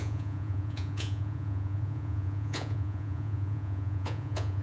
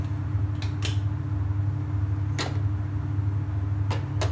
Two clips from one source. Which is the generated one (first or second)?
first